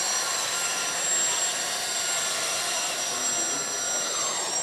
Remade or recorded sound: recorded